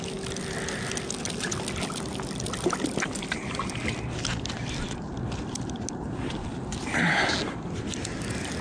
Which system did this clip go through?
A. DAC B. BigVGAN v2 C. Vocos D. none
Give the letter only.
D